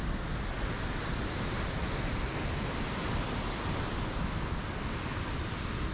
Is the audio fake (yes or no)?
no